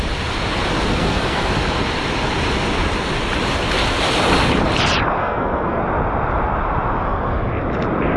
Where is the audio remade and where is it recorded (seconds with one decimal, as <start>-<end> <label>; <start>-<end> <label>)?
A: 0.0-0.9 recorded; 0.9-1.5 remade; 1.5-5.2 recorded; 5.2-5.8 remade; 5.8-7.0 recorded; 7.0-7.5 remade; 7.5-8.2 recorded